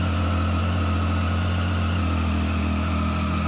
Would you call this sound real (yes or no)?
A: yes